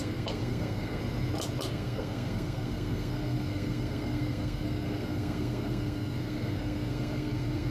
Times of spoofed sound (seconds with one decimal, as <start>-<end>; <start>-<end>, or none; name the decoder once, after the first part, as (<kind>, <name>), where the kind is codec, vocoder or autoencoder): 0.0-1.0 (codec, SNAC); 1.7-7.7